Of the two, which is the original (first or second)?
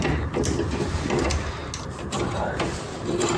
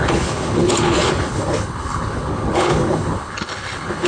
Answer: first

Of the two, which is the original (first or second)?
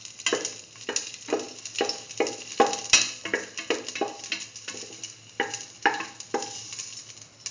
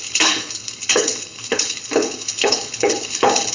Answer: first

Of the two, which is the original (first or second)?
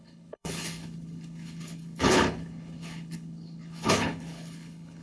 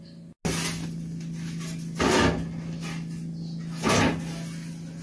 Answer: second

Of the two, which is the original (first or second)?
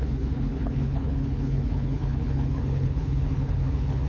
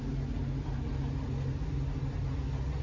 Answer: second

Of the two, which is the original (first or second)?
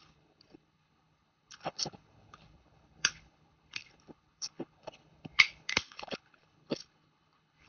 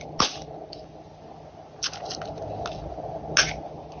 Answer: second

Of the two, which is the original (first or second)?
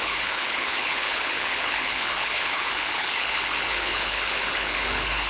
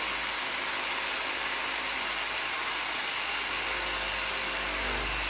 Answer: second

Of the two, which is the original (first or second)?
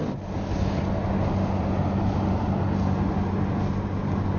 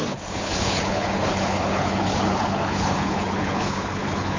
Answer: first